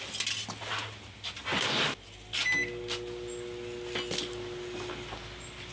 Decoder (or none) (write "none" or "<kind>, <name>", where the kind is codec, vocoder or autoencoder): none